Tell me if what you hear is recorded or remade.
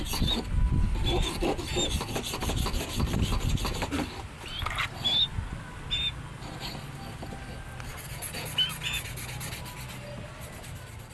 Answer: recorded